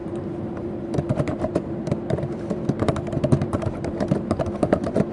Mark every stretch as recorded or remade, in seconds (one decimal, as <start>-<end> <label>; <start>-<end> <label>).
0.0-5.1 remade